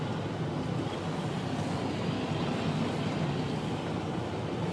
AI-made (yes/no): no